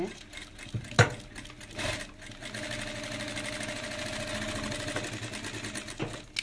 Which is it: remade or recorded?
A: recorded